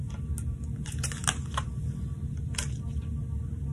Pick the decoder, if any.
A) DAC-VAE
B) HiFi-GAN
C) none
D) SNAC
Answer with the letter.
C